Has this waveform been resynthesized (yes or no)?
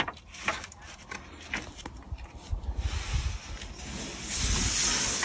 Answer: no